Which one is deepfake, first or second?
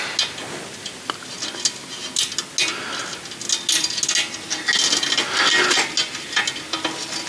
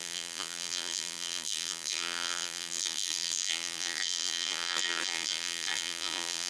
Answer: second